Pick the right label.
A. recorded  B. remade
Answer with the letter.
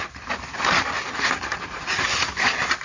A